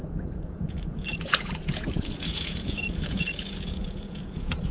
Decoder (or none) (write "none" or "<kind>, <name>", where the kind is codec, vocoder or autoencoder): vocoder, Vocos